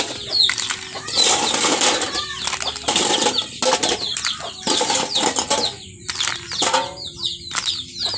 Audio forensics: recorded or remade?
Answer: recorded